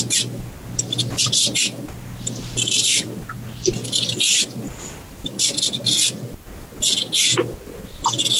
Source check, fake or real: real